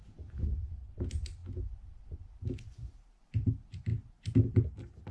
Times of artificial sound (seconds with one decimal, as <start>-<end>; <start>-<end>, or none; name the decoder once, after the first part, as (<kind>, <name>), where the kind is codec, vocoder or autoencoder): none